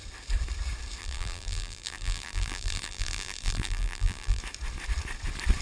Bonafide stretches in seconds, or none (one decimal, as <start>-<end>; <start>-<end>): 0.0-1.0; 4.4-5.6